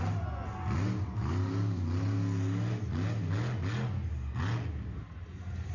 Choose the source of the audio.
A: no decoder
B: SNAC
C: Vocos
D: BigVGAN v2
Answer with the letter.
A